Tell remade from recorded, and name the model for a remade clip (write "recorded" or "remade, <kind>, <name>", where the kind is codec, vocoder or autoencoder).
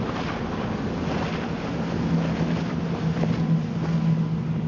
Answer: recorded